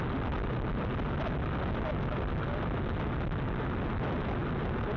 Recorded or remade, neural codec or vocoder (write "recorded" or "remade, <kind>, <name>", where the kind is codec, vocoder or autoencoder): recorded